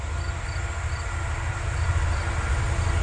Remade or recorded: recorded